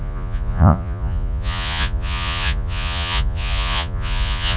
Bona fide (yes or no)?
no